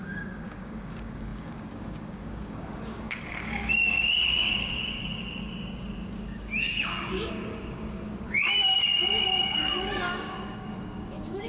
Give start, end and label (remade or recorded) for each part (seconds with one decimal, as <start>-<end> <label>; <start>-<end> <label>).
0.0-11.5 remade